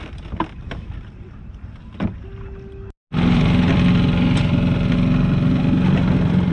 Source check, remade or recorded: recorded